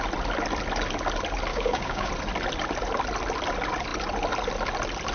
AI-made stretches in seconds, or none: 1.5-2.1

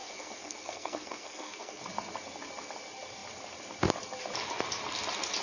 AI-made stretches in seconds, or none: 0.0-1.8